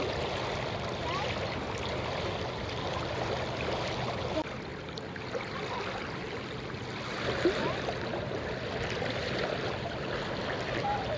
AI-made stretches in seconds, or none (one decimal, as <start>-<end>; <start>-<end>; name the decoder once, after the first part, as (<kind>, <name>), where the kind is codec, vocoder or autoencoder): none

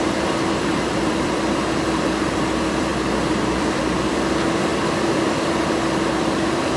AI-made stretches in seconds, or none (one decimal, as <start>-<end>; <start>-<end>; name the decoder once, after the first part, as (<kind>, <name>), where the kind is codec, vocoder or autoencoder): 0.0-6.8 (vocoder, BigVGAN v2)

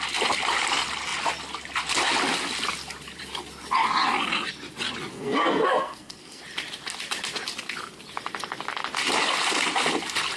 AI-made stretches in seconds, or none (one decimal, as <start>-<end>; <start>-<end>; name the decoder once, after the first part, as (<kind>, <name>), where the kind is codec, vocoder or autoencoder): 5.1-6.4 (codec, SNAC)

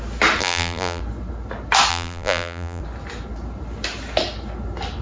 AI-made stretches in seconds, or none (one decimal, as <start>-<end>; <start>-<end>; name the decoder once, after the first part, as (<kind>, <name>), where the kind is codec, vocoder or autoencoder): 0.4-1.0 (vocoder, BigVGAN v2); 1.9-2.8

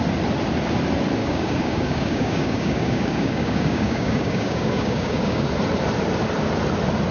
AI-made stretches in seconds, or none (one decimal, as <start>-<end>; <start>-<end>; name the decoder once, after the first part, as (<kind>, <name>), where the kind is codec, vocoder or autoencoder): 1.2-5.5 (codec, DAC)

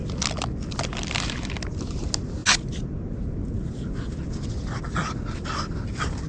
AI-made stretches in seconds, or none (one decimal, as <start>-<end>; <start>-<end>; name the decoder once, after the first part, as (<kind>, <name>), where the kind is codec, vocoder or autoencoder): none

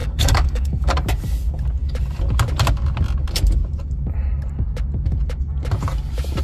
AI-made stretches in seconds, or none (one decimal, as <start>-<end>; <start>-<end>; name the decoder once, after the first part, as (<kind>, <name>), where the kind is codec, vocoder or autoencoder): 0.0-0.9 (codec, DAC)